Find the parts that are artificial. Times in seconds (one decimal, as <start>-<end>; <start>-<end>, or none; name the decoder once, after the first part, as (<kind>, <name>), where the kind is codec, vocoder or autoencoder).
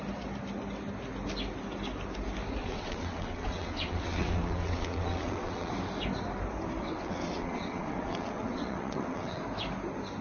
2.6-5.7 (vocoder, WaveNeXt); 6.8-9.4